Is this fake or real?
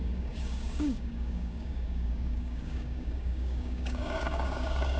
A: fake